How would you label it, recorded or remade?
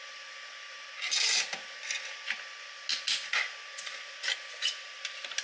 recorded